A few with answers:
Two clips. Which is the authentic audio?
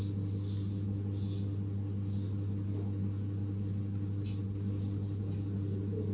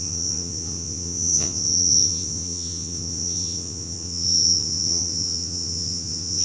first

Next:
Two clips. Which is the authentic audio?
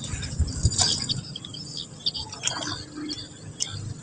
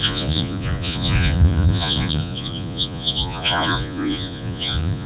first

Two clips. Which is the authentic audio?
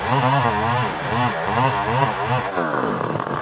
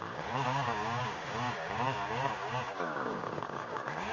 first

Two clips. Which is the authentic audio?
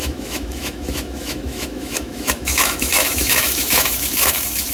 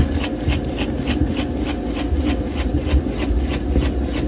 second